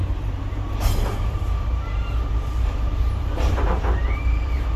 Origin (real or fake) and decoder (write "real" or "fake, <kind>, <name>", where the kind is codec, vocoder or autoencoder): fake, vocoder, BigVGAN v2